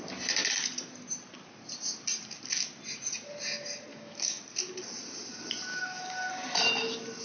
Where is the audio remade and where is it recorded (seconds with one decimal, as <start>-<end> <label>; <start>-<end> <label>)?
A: 0.0-3.9 recorded; 3.9-4.4 remade; 4.4-5.7 recorded; 5.7-6.3 remade; 6.3-7.2 recorded